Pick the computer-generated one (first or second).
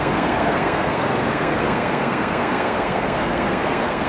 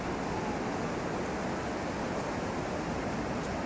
first